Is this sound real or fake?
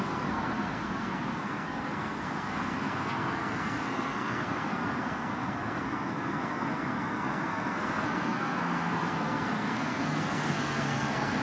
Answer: fake